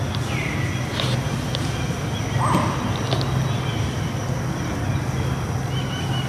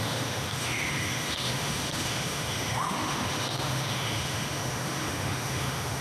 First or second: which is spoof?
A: second